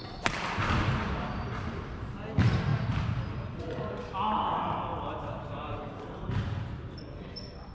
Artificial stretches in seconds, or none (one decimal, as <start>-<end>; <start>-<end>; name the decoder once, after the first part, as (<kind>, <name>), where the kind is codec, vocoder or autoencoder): 4.9-7.0 (vocoder, BigVGAN v2)